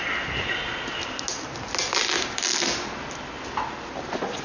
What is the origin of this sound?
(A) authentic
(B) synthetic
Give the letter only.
A